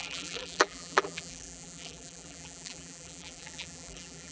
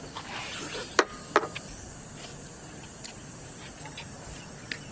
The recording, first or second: second